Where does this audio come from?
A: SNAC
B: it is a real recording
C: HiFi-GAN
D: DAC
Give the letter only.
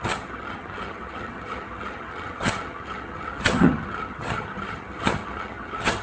C